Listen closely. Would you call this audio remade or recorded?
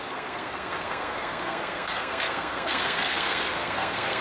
remade